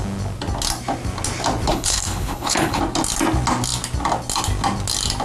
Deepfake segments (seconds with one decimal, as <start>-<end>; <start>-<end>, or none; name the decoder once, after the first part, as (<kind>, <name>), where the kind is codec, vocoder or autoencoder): 1.7-2.8 (codec, HILCodec)